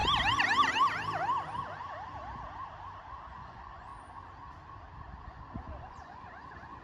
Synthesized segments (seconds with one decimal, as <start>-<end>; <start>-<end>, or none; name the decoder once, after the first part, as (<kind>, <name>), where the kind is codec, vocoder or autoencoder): 3.3-3.9 (vocoder, Vocos); 5.2-6.8